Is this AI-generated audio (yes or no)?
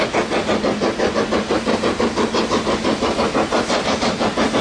no